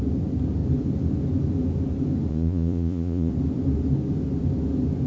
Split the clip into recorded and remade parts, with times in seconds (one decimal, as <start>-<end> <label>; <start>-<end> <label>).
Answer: 0.0-2.3 recorded; 2.3-3.3 remade; 3.3-5.1 recorded